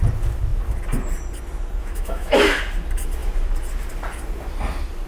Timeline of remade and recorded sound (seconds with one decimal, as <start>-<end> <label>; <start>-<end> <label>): 0.0-1.8 recorded; 1.8-2.6 remade; 2.6-5.1 recorded